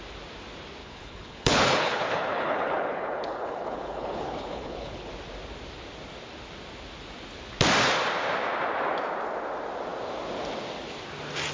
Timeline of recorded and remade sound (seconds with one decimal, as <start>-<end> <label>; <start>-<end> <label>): 0.0-0.8 recorded; 0.8-5.1 remade; 5.1-11.5 recorded